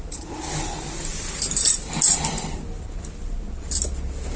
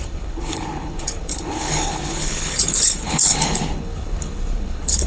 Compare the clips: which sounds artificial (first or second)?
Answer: second